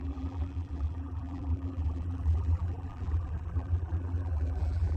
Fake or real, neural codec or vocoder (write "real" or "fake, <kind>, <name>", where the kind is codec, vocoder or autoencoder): fake, vocoder, BigVGAN v2